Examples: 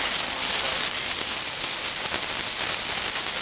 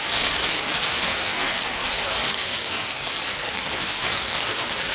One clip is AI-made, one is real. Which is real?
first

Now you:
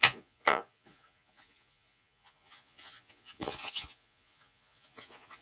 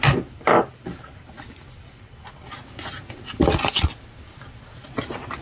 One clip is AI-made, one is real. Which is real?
second